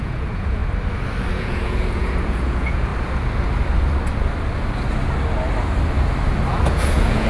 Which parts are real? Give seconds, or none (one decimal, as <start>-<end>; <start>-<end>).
0.6-1.3; 2.9-6.6